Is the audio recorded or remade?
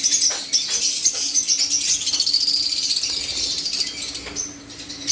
recorded